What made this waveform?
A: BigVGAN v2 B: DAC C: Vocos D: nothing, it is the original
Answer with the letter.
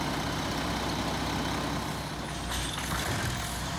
D